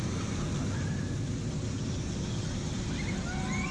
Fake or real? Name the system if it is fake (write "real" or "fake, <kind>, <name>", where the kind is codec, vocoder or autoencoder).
real